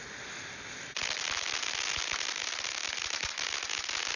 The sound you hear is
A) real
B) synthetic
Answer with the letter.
A